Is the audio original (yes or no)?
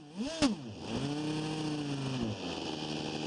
yes